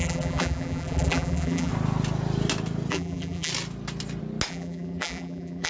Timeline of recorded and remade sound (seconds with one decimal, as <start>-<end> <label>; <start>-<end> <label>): 0.0-1.7 remade; 1.7-2.9 recorded; 2.9-3.5 remade; 3.5-4.5 recorded; 4.5-5.7 remade